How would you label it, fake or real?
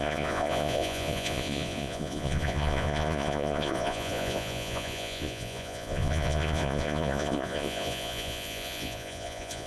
fake